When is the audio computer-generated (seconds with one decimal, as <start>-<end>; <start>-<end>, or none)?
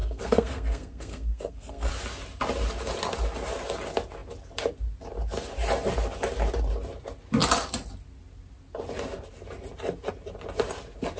0.0-1.9